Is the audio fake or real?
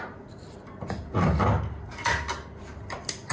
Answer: real